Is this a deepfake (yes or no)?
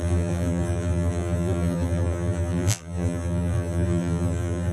yes